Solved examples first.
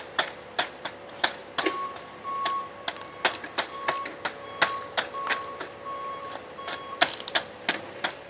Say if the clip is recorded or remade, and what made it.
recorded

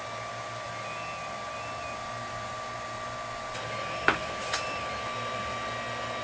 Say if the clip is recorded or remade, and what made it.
recorded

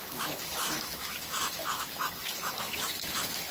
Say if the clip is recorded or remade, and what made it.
remade, autoencoder, DAC-VAE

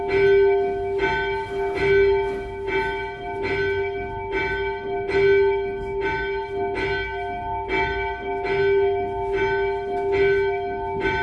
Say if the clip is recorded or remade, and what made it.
recorded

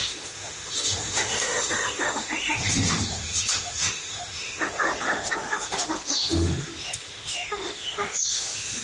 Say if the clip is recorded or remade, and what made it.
remade, autoencoder, DAC-VAE